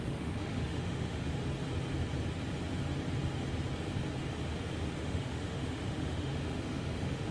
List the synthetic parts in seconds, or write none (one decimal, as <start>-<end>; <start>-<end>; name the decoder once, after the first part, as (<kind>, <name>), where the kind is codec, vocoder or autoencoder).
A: 0.0-1.3 (autoencoder, DAC-VAE); 5.0-7.3